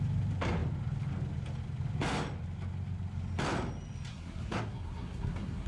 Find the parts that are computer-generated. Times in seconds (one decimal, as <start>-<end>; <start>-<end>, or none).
4.1-5.7